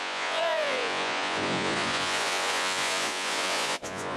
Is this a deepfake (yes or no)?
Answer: yes